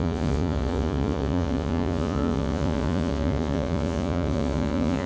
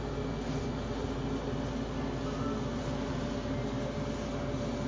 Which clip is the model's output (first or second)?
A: first